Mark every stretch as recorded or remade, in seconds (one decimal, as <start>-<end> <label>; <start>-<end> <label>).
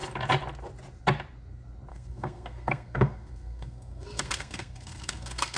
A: 0.0-1.9 recorded; 1.9-5.6 remade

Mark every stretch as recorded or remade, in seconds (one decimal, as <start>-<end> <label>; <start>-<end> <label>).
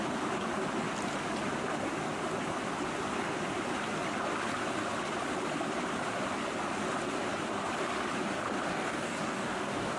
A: 0.0-8.7 recorded; 8.7-10.0 remade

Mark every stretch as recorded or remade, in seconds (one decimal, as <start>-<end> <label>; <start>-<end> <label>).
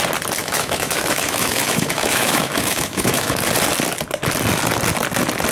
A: 0.0-0.4 recorded; 0.4-3.4 remade; 3.4-5.5 recorded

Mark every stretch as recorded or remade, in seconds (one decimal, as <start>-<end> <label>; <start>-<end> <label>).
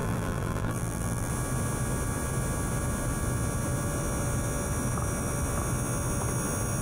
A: 0.0-1.3 remade; 1.3-6.8 recorded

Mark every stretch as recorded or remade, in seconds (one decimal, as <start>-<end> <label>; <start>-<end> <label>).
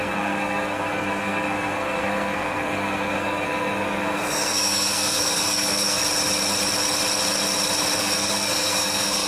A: 0.0-6.0 remade; 6.0-8.0 recorded; 8.0-9.3 remade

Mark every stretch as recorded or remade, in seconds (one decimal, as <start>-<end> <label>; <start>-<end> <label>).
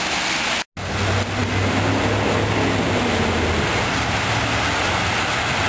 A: 0.0-5.7 recorded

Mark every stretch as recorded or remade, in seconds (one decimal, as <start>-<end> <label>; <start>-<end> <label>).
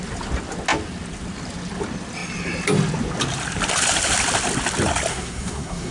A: 0.0-5.1 recorded; 5.1-5.9 remade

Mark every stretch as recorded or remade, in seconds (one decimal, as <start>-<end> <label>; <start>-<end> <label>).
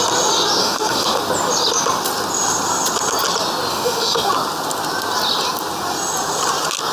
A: 0.0-0.6 recorded; 0.6-1.2 remade; 1.2-3.7 recorded; 3.7-4.3 remade; 4.3-6.9 recorded